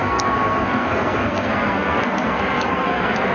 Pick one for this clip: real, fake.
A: fake